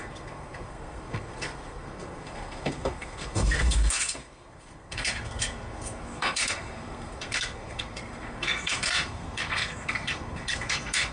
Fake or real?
fake